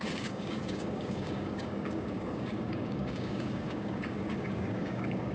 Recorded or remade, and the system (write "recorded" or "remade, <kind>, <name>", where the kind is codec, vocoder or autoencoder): remade, codec, DAC